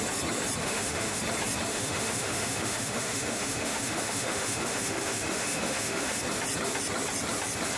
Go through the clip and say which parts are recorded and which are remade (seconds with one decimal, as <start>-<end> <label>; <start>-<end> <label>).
0.0-0.6 recorded; 0.6-1.2 remade; 1.2-1.7 recorded; 1.7-6.2 remade; 6.2-7.8 recorded

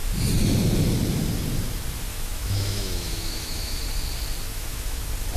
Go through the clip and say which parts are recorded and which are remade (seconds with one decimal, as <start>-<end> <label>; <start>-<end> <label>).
0.0-2.1 recorded; 2.1-3.8 remade; 3.8-4.5 recorded; 4.5-5.0 remade; 5.0-5.4 recorded

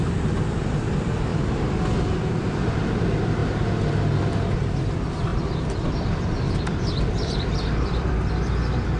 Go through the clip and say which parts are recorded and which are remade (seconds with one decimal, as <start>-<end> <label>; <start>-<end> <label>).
0.0-1.3 recorded; 1.3-1.9 remade; 1.9-5.3 recorded; 5.3-8.1 remade; 8.1-9.0 recorded

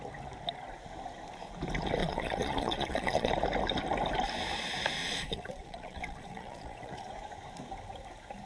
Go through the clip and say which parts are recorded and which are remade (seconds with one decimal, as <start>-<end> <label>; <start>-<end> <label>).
0.0-2.0 recorded; 2.0-3.3 remade; 3.3-5.0 recorded; 5.0-7.1 remade; 7.1-8.5 recorded

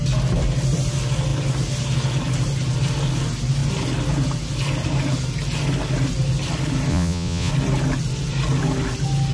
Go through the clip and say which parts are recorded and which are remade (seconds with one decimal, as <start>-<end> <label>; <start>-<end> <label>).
0.0-6.9 recorded; 6.9-7.5 remade; 7.5-9.3 recorded

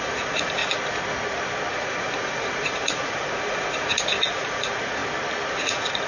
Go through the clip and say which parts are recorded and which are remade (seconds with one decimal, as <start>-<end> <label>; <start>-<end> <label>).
0.0-0.6 remade; 0.6-1.7 recorded; 1.7-5.0 remade; 5.0-5.5 recorded; 5.5-6.1 remade